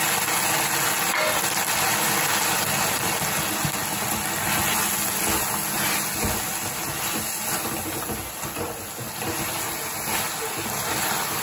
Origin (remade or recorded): recorded